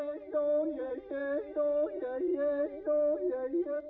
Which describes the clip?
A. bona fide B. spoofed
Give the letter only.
B